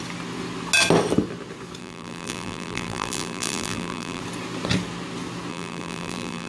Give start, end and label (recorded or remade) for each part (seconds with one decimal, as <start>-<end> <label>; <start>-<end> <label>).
0.0-1.8 recorded; 1.8-4.2 remade; 4.2-5.5 recorded; 5.5-6.5 remade